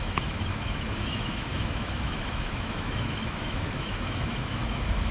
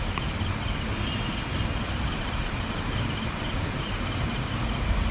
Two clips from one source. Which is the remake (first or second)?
first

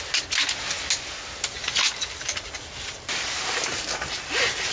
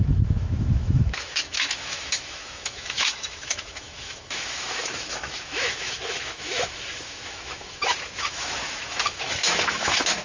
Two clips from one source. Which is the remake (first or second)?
second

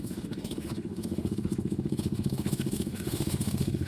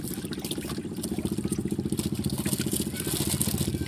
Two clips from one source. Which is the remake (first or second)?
first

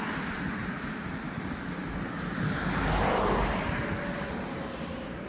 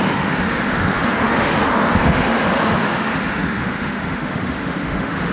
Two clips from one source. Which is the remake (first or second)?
second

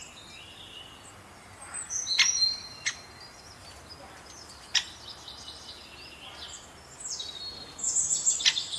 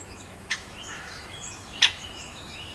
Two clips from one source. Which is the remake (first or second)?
second